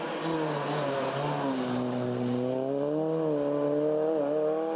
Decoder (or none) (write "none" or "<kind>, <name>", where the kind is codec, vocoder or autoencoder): none